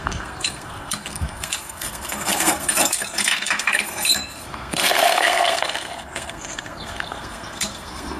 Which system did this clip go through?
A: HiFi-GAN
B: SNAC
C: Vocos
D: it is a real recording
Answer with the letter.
B